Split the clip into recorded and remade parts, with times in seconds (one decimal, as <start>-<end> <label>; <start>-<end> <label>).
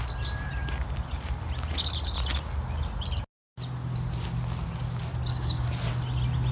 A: 0.0-5.3 recorded; 5.3-5.9 remade; 5.9-6.5 recorded